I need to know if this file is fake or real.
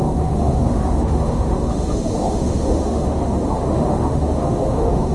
fake